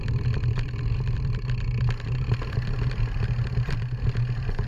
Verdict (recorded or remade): recorded